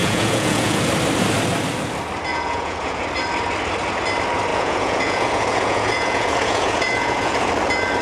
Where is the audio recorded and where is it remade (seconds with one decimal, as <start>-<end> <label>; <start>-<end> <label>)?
0.0-0.8 remade; 0.8-2.3 recorded; 2.3-3.0 remade; 3.0-4.5 recorded; 4.5-7.5 remade; 7.5-8.0 recorded